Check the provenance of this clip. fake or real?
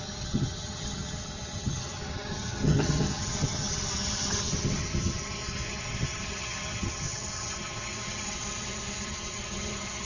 fake